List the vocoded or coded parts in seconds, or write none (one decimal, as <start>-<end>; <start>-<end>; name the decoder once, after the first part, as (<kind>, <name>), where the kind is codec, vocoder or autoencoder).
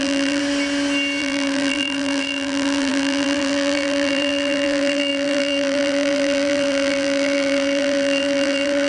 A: 0.0-0.4 (vocoder, BigVGAN v2); 1.2-8.9